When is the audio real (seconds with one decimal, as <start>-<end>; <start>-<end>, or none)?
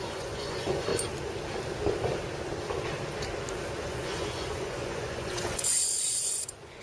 0.9-3.8